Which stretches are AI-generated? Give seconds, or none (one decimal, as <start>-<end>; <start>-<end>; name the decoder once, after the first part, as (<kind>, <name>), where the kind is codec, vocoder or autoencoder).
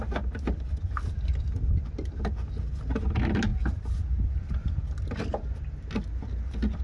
none